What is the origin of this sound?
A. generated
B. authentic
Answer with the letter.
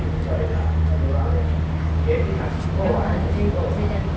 B